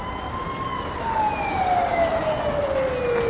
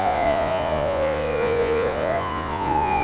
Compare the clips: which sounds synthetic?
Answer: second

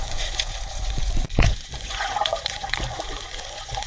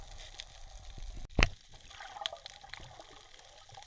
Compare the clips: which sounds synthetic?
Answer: first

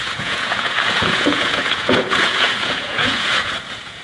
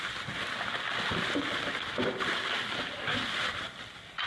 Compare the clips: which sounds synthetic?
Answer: first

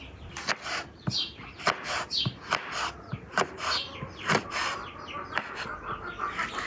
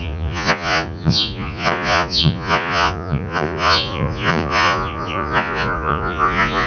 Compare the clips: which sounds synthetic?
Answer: second